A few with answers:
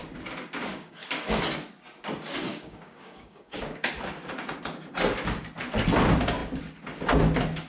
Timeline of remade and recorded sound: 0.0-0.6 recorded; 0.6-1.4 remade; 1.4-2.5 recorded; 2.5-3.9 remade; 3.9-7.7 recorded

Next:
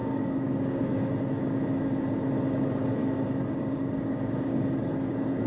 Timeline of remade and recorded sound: 0.0-1.1 remade; 1.1-3.0 recorded; 3.0-5.5 remade